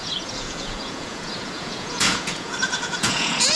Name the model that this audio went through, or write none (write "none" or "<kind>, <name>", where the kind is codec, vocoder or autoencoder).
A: vocoder, Vocos